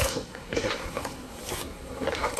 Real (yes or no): no